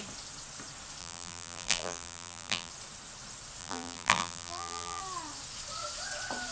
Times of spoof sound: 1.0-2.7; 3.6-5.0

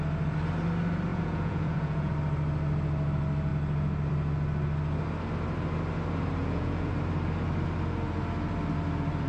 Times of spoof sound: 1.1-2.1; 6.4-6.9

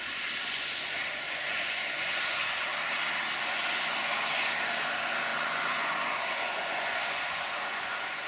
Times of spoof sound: 0.0-2.7; 3.4-8.3